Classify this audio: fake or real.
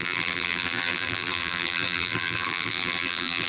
fake